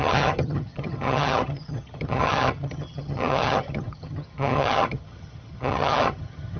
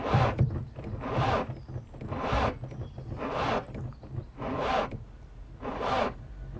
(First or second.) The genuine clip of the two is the second